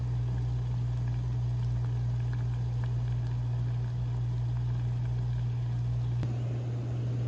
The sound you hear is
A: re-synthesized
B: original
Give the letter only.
B